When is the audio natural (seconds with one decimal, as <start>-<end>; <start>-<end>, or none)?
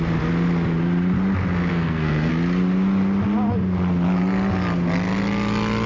0.0-1.7; 2.3-5.9